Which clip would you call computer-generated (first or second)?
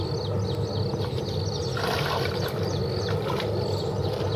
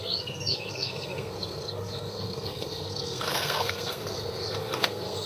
second